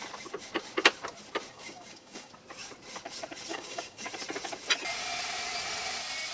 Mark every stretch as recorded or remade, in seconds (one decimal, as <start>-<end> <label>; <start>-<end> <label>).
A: 0.0-1.5 recorded; 1.5-2.3 remade; 2.3-3.5 recorded; 3.5-4.1 remade; 4.1-6.3 recorded